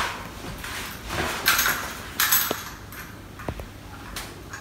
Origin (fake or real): real